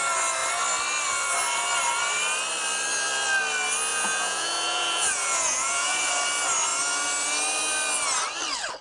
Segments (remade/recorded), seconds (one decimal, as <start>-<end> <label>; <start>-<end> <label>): 0.0-3.9 recorded; 3.9-6.1 remade; 6.1-8.8 recorded